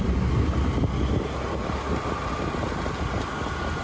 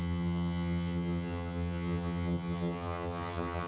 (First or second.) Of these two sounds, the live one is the first